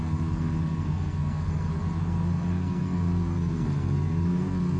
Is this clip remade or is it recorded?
remade